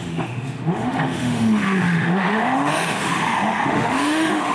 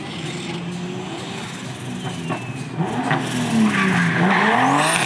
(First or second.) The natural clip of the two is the second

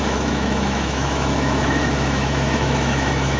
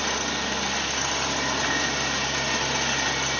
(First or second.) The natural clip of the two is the second